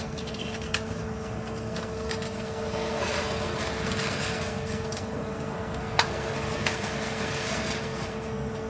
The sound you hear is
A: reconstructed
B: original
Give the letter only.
A